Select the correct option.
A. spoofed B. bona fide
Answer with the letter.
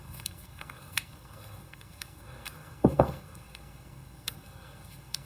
A